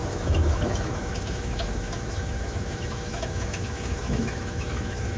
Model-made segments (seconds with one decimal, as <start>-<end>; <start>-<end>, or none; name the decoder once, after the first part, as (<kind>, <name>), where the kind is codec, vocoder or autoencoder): 0.0-5.2 (autoencoder, DAC-VAE)